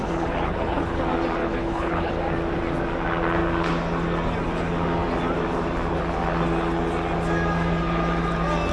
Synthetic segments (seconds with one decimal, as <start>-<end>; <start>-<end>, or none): 0.0-1.0; 1.4-2.1